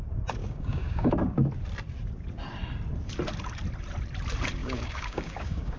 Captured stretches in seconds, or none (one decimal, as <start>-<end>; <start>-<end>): 0.0-0.4; 1.1-4.6